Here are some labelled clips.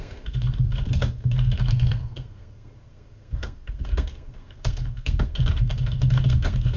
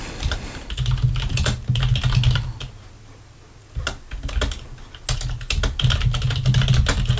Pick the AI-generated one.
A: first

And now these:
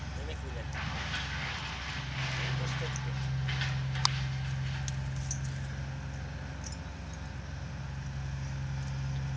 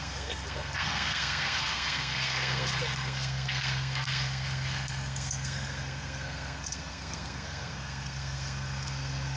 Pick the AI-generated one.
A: second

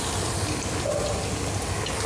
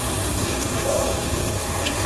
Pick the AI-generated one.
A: second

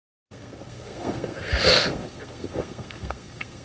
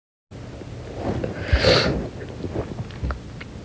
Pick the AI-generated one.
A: first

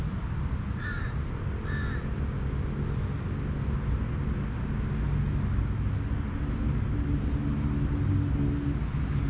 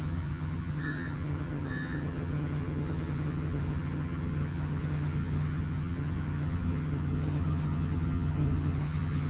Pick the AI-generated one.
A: second